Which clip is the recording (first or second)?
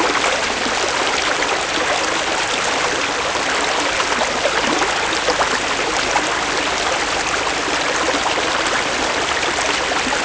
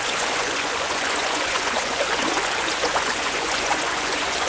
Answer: first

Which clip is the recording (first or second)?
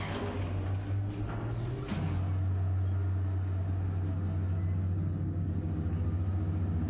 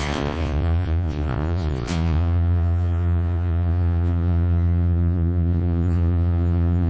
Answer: first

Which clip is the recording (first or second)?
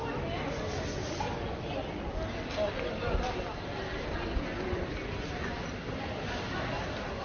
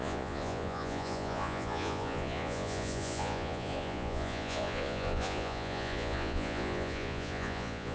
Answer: first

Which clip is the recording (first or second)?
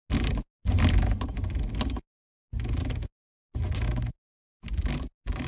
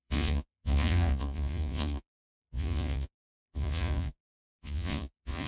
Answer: first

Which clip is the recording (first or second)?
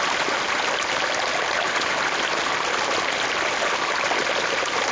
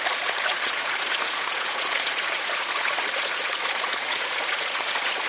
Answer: first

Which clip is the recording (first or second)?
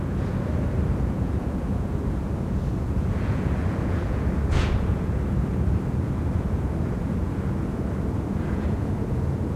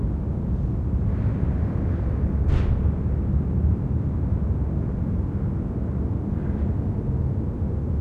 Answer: second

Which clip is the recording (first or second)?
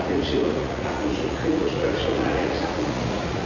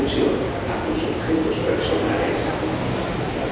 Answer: second